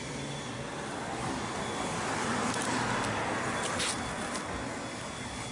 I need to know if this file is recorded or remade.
recorded